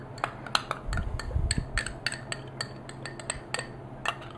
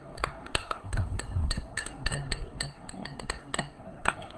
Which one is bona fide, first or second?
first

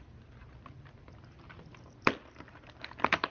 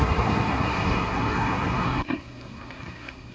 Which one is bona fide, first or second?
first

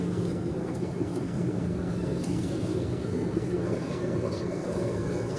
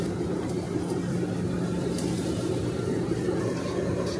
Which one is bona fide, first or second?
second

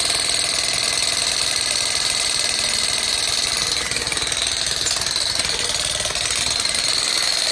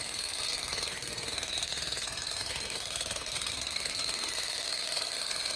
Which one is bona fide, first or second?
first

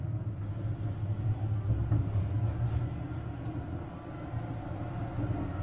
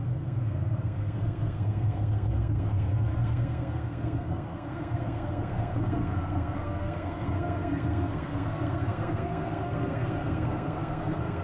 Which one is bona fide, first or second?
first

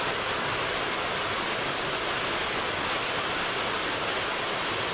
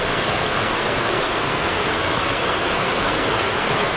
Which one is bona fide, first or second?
first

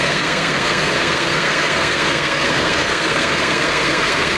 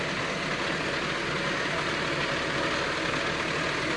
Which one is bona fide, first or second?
second